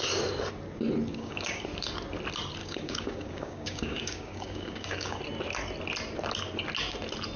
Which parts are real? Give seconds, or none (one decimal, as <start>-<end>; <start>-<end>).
0.0-1.1; 1.6-2.6; 5.2-7.4